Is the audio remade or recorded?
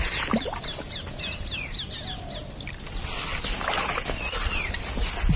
recorded